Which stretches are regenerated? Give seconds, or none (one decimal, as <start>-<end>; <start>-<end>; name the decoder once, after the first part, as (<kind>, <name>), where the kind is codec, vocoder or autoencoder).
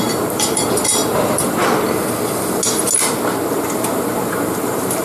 0.0-1.6 (vocoder, BigVGAN v2); 3.5-5.0